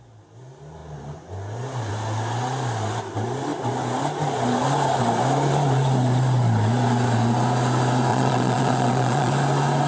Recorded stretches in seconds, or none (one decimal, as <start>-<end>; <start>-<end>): 0.0-8.1; 9.3-9.9